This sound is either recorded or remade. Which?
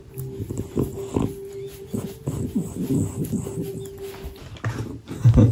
recorded